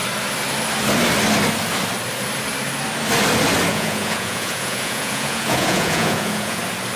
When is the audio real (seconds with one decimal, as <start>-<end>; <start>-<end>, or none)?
0.0-3.7; 6.6-7.0